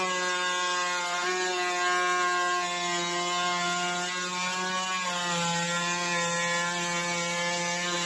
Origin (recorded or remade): recorded